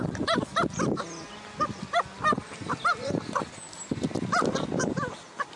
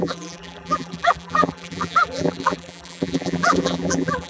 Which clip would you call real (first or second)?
first